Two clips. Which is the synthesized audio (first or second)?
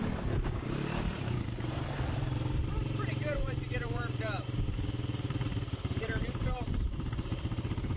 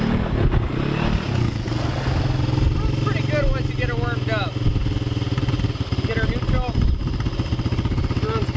first